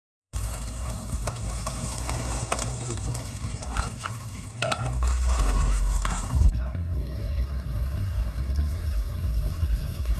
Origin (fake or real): fake